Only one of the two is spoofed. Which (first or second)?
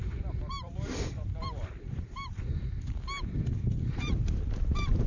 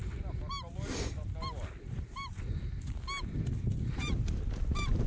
first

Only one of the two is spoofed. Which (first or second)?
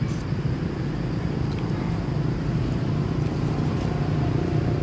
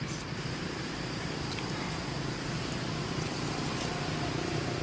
second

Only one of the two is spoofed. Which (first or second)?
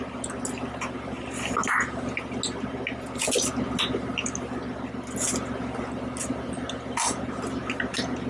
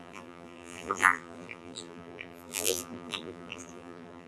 second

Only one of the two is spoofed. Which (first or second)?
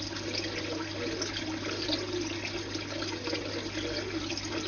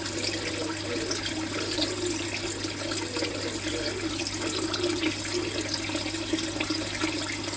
second